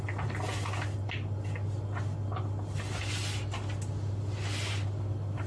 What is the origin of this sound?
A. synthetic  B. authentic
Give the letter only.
B